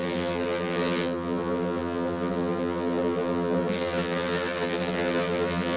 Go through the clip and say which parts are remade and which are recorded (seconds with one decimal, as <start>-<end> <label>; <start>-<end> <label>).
0.0-5.8 remade